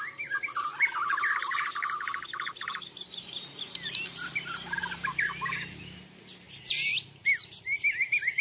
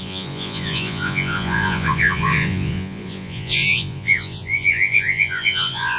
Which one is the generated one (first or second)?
second